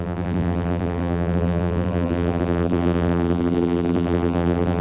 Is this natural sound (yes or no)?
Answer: no